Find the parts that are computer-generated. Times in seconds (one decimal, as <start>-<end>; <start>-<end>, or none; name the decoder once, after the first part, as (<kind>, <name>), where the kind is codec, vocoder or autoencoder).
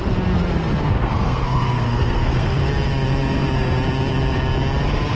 0.9-2.6 (codec, SNAC)